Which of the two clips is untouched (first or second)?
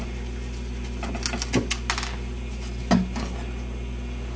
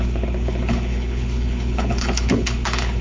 first